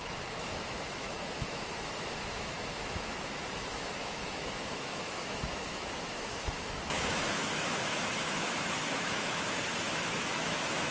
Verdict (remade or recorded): remade